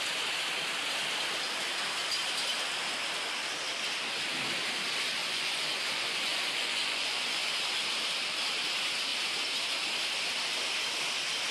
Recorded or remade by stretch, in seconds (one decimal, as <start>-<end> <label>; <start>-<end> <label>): 0.0-5.2 recorded; 5.2-7.5 remade; 7.5-11.5 recorded